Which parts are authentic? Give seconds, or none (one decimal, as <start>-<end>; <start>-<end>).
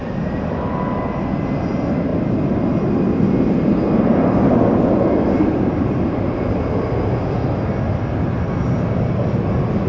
0.0-9.9